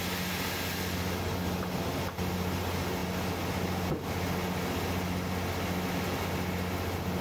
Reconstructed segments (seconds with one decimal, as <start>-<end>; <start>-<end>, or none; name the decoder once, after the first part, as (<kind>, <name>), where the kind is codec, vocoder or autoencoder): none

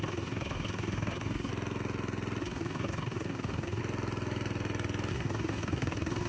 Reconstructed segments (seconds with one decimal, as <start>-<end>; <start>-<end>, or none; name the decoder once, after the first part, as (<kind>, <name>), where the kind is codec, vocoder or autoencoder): 0.0-1.5 (codec, SNAC); 2.4-3.8; 5.1-6.3

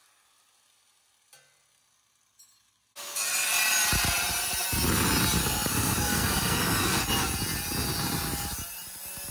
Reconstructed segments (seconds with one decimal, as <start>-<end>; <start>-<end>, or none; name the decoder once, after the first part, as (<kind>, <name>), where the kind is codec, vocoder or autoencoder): 5.4-7.0 (codec, SNAC)